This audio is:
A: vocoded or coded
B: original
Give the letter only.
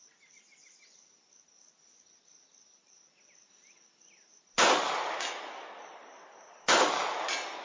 B